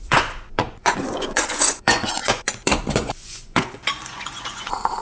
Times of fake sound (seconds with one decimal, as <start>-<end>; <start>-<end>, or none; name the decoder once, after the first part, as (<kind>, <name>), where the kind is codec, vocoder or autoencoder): 0.0-5.0 (vocoder, Vocos)